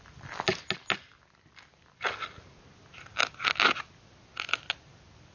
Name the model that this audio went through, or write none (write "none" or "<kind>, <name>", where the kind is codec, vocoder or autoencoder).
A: none